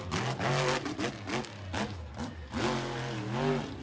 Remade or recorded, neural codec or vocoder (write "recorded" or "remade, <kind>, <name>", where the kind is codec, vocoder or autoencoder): recorded